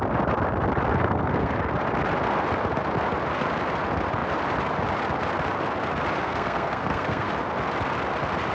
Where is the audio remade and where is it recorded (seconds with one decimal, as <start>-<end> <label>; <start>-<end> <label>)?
0.0-0.9 recorded; 0.9-1.5 remade; 1.5-6.2 recorded; 6.2-7.3 remade; 7.3-8.5 recorded